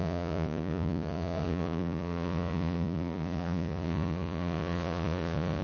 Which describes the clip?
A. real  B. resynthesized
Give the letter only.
B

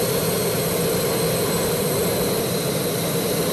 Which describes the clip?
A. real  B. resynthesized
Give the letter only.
A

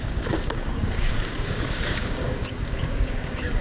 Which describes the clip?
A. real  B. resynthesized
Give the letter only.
B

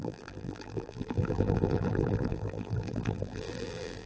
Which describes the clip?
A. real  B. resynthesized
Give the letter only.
B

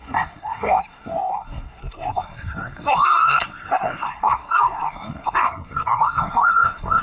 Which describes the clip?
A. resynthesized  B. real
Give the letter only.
A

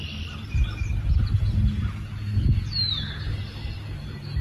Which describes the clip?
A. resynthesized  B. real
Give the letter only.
B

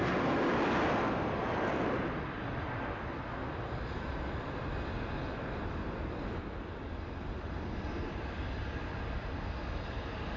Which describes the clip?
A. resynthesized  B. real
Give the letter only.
B